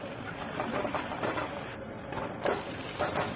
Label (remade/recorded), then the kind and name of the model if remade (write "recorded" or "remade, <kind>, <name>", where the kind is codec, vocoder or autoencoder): remade, vocoder, BigVGAN v2